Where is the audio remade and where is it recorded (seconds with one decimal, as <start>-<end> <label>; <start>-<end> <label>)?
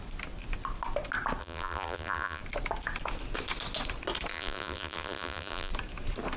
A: 0.0-1.4 recorded; 1.4-2.4 remade; 2.4-4.3 recorded; 4.3-5.7 remade; 5.7-6.4 recorded